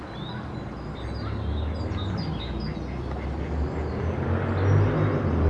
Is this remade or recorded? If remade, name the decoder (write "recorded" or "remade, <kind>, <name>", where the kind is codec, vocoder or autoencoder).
recorded